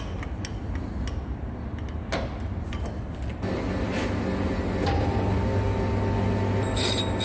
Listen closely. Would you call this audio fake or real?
real